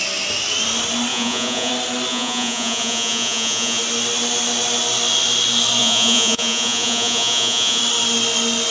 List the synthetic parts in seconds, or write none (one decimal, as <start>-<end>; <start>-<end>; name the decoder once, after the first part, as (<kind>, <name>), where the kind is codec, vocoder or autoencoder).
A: 1.1-1.7 (vocoder, Vocos); 2.1-3.8; 5.8-7.8